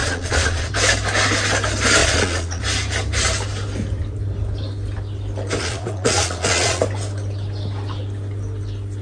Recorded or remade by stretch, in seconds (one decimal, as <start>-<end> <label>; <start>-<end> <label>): 0.0-0.7 remade; 0.7-2.0 recorded; 2.0-2.6 remade; 2.6-5.6 recorded; 5.6-6.8 remade; 6.8-9.0 recorded